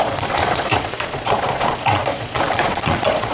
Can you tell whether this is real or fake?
fake